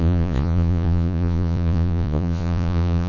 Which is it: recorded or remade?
remade